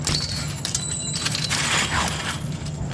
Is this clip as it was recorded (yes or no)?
yes